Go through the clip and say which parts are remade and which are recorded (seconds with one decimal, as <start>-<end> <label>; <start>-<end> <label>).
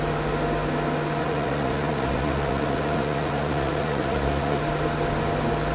0.0-1.2 recorded; 1.2-4.6 remade; 4.6-5.7 recorded